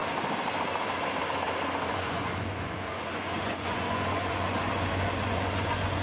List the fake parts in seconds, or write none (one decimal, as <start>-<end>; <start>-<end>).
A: 1.9-6.0